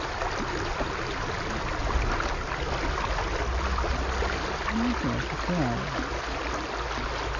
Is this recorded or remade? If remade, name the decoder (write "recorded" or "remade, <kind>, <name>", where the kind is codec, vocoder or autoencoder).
recorded